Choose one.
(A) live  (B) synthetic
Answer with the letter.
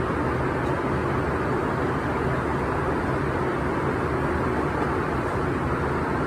A